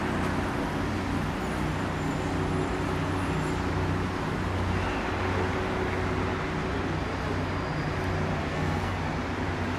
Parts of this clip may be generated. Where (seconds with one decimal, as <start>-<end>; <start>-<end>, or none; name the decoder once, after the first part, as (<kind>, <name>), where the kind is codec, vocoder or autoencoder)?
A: 8.5-9.0 (codec, SNAC)